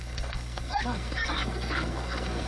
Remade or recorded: remade